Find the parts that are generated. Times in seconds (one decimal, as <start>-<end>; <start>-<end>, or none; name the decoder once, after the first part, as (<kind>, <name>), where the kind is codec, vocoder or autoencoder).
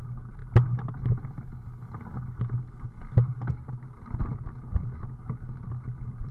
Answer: none